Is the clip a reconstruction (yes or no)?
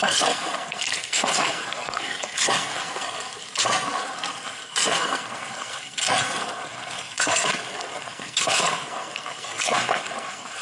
yes